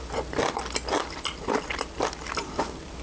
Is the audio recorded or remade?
recorded